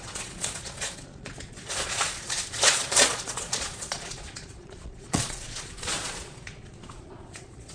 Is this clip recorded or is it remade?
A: remade